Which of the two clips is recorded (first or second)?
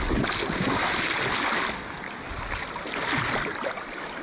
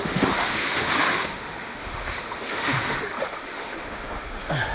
first